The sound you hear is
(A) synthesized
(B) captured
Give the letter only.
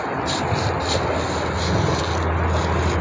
B